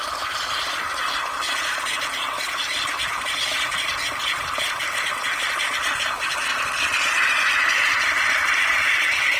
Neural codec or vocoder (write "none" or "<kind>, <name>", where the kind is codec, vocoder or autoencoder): none